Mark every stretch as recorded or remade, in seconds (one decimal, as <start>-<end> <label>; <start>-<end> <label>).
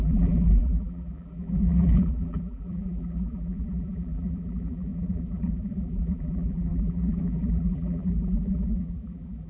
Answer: 0.0-9.5 remade